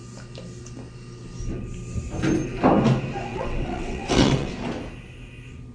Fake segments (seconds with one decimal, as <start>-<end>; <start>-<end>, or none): 3.3-4.5